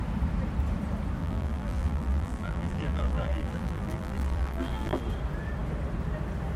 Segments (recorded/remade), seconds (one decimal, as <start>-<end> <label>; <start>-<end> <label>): 0.0-1.2 recorded; 1.2-5.0 remade; 5.0-6.6 recorded